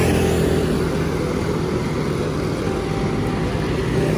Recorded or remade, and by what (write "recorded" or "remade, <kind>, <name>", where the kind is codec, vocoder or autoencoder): recorded